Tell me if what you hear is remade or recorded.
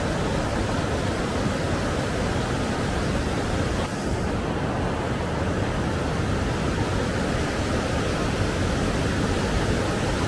recorded